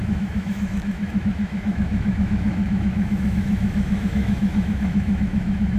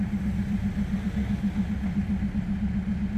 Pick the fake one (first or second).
first